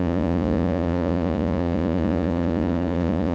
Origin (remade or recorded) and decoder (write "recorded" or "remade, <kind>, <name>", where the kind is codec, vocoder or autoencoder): remade, vocoder, Vocos